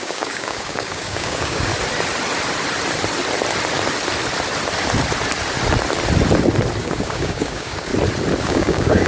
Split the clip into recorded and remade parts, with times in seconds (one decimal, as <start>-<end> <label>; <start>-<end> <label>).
0.0-1.7 remade; 1.7-6.8 recorded; 6.8-7.9 remade; 7.9-8.4 recorded; 8.4-9.1 remade